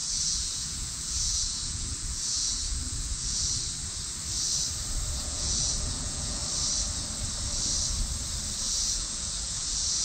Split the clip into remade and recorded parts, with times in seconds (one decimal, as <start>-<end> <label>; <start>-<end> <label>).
0.0-3.5 remade; 3.5-5.2 recorded; 5.2-6.4 remade; 6.4-8.6 recorded; 8.6-10.0 remade